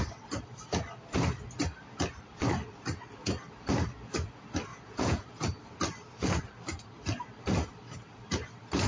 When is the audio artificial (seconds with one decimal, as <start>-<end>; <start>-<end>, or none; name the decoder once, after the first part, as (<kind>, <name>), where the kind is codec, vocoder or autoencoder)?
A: 4.7-5.3 (vocoder, Vocos)

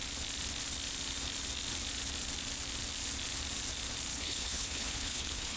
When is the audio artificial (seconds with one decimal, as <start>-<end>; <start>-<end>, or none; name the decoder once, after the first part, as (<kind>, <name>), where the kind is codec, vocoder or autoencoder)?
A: 4.1-5.6 (codec, HILCodec)

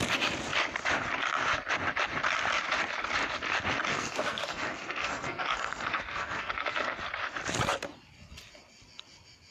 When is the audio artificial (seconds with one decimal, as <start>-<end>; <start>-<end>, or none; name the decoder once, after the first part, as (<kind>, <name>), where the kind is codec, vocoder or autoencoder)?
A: 3.9-7.0 (codec, SNAC)

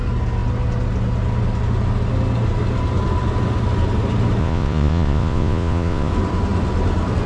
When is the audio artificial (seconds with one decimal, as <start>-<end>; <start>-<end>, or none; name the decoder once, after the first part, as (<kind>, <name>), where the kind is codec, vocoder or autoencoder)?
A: 4.4-6.1 (vocoder, Vocos)

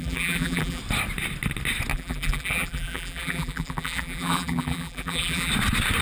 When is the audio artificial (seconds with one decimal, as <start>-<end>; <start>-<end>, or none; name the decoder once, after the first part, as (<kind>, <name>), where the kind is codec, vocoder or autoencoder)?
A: 0.0-0.8 (vocoder, BigVGAN v2); 1.9-5.5

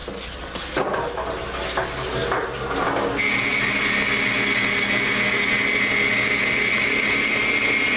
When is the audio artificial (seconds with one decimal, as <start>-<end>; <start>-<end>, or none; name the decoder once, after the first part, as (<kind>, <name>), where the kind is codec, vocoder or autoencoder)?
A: none

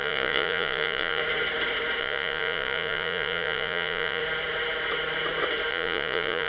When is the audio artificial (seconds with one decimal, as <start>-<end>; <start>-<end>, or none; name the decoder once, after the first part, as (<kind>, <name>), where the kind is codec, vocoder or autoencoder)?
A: 0.0-1.2 (vocoder, Vocos); 2.0-4.2; 5.7-6.5

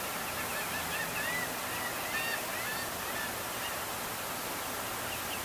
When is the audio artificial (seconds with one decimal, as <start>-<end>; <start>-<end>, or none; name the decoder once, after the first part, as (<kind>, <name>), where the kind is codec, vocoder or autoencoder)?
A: none